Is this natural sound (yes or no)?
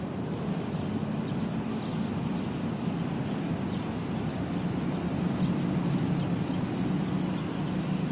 yes